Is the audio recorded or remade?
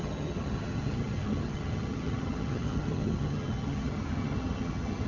remade